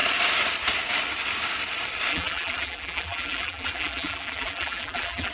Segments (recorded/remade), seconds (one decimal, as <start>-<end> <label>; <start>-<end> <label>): 0.0-2.1 recorded; 2.1-5.3 remade